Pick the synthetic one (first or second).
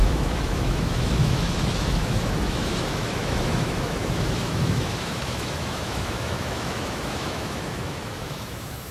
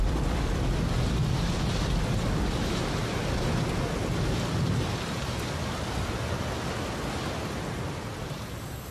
first